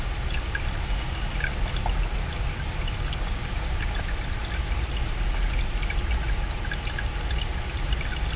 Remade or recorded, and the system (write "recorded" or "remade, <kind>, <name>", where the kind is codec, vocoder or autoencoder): recorded